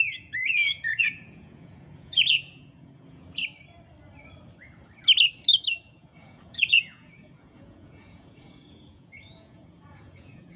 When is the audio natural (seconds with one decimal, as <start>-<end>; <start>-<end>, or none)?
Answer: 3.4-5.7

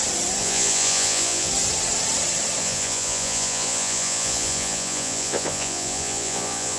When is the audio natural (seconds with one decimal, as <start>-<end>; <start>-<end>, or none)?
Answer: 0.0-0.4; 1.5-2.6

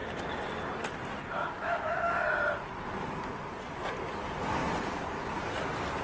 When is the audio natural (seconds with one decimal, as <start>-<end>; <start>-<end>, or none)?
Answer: 0.0-6.0